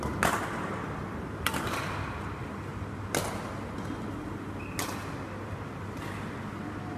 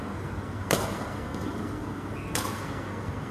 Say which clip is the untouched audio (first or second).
first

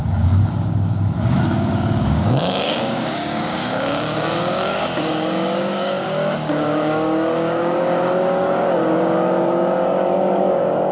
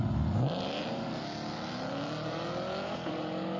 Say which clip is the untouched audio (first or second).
second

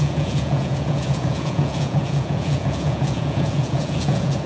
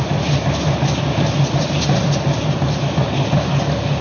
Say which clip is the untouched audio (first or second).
second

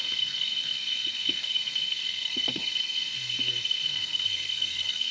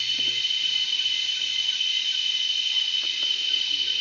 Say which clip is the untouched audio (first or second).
second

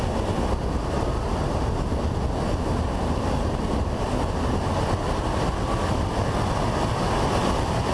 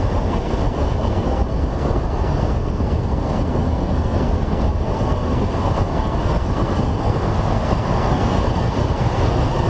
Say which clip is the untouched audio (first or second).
first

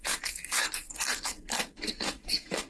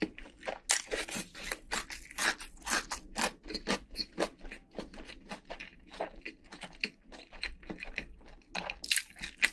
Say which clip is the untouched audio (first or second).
second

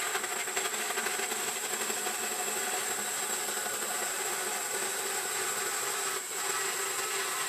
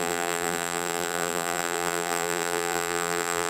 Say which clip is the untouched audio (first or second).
first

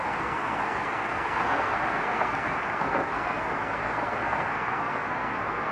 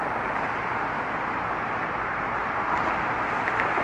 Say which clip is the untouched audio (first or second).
second